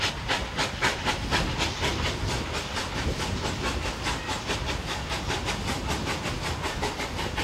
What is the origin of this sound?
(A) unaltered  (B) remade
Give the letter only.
A